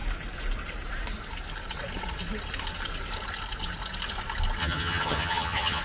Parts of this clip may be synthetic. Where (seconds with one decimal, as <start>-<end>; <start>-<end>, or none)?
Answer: 4.6-5.8